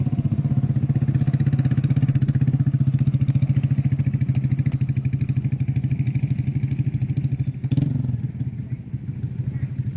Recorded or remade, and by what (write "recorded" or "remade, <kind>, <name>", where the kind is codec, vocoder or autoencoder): recorded